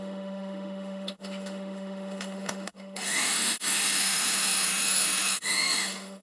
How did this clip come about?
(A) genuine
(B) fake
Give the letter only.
B